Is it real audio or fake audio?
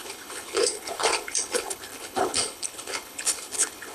fake